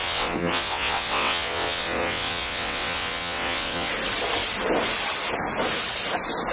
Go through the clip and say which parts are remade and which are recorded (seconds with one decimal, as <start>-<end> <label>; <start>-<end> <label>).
0.0-3.9 remade; 3.9-6.5 recorded

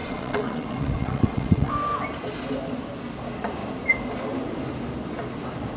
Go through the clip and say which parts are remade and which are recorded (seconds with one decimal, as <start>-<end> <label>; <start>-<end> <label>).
0.0-1.7 remade; 1.7-5.8 recorded

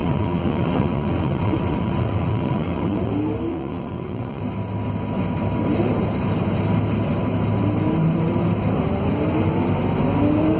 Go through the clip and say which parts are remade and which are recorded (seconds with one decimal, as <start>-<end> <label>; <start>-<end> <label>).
0.0-3.1 remade; 3.1-3.5 recorded; 3.5-4.4 remade; 4.4-10.6 recorded

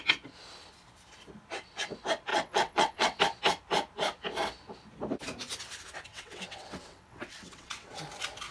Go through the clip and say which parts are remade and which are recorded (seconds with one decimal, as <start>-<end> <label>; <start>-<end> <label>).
0.0-2.3 recorded; 2.3-3.2 remade; 3.2-6.1 recorded; 6.1-8.0 remade; 8.0-8.5 recorded

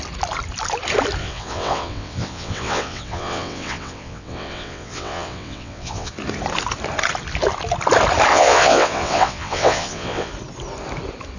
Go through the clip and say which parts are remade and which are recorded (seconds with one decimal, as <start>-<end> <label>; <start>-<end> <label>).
0.0-1.2 recorded; 1.2-6.1 remade; 6.1-8.3 recorded; 8.3-10.3 remade; 10.3-11.4 recorded